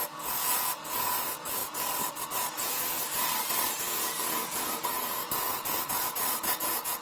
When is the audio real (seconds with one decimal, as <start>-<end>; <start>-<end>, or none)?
1.6-2.5; 3.0-3.8